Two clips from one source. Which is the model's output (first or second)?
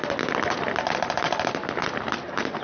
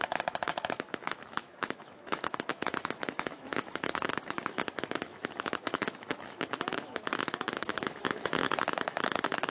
second